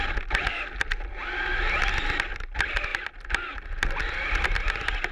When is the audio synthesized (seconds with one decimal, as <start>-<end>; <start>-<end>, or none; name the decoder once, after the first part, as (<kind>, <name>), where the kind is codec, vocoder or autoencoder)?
none